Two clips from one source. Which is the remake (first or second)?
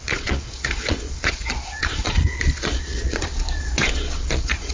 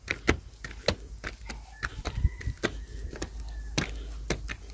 first